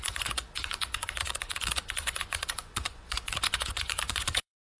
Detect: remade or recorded remade